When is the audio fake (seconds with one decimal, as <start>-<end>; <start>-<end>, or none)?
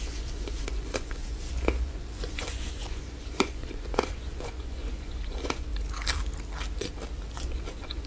0.0-5.7; 7.3-8.1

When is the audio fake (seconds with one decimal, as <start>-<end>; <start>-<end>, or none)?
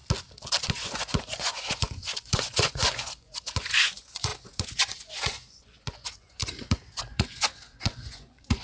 0.7-8.6